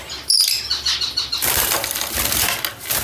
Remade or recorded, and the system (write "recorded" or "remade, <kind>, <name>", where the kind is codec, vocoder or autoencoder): recorded